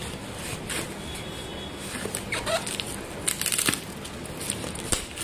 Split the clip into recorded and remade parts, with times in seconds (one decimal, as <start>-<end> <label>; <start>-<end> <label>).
0.0-5.2 recorded